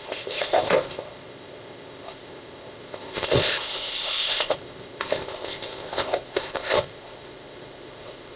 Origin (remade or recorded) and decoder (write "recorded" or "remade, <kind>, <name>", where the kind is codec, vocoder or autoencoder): remade, codec, ZipCodec